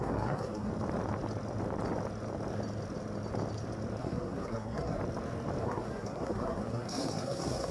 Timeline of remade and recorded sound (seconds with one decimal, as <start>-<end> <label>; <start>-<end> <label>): 0.0-0.7 remade; 0.7-4.0 recorded; 4.0-5.0 remade; 5.0-5.6 recorded; 5.6-7.7 remade